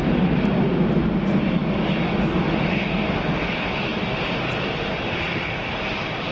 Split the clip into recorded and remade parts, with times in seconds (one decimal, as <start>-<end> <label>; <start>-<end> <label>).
0.0-6.3 recorded